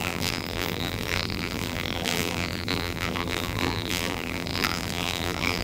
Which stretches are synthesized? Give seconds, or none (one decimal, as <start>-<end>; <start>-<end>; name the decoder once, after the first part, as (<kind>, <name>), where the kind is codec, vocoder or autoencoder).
0.0-5.6 (vocoder, BigVGAN v2)